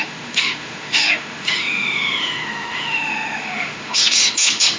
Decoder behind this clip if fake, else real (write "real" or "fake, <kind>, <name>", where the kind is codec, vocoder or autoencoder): fake, autoencoder, DAC-VAE